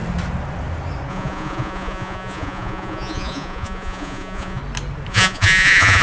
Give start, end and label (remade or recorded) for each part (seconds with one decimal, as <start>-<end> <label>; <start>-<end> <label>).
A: 0.0-1.1 recorded; 1.1-4.6 remade; 4.6-5.1 recorded; 5.1-6.0 remade